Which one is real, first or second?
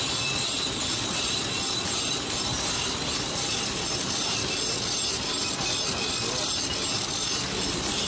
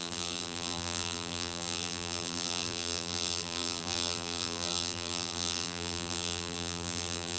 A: first